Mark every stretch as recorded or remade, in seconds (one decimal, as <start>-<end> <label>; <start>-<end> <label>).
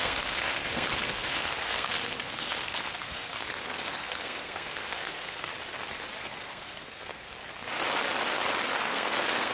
0.0-5.5 remade; 5.5-6.2 recorded; 6.2-7.4 remade; 7.4-8.8 recorded; 8.8-9.5 remade